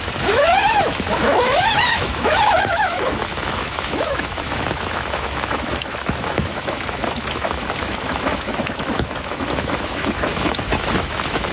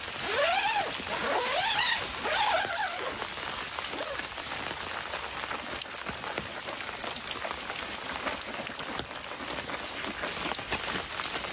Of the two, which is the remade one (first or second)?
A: first